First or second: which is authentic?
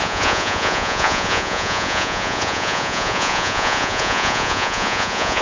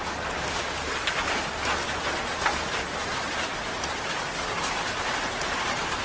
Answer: second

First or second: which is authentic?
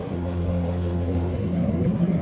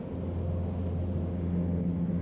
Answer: second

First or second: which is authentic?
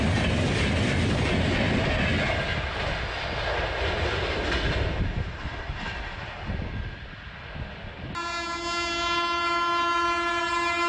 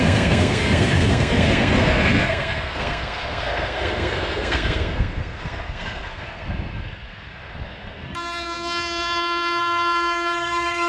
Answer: first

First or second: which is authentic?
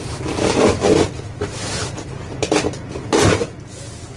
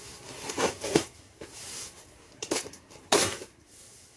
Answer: first